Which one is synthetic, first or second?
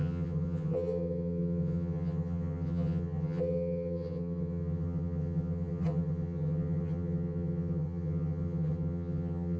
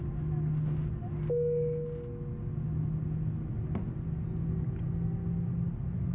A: first